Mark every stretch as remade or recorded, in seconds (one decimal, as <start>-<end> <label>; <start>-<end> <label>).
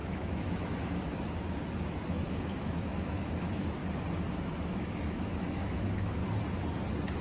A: 0.0-3.8 remade; 3.8-4.4 recorded; 4.4-6.2 remade; 6.2-7.2 recorded